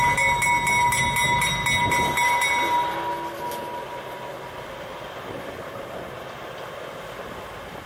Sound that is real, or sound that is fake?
real